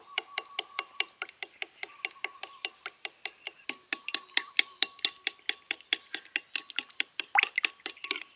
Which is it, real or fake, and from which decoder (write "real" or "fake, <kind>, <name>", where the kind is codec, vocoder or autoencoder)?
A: real